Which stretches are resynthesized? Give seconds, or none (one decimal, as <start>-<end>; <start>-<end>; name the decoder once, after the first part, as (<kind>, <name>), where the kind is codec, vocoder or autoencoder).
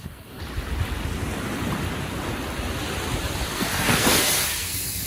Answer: 0.0-0.4 (codec, SNAC); 3.5-5.1